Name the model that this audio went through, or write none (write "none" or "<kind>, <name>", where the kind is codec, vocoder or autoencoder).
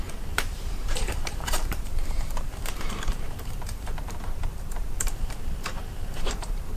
vocoder, BigVGAN v2